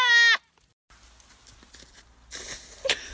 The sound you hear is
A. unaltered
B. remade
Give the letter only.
A